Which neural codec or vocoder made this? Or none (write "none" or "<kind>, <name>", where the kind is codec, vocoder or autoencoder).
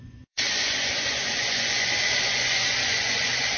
vocoder, Vocos